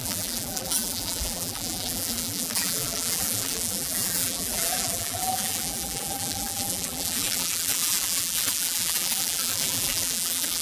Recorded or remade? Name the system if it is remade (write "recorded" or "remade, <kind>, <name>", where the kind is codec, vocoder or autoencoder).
remade, vocoder, BigVGAN v2